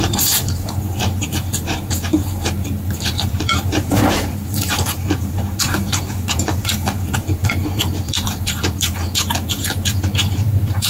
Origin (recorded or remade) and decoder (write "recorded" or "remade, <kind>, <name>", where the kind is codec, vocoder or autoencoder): remade, vocoder, BigVGAN v2